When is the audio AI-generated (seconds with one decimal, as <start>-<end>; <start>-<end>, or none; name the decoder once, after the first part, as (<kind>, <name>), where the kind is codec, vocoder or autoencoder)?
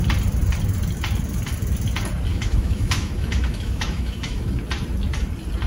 2.3-4.6 (autoencoder, DAC-VAE)